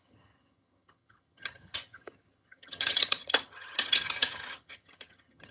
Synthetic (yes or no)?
yes